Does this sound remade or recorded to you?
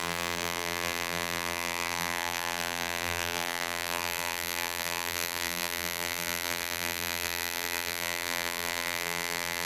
remade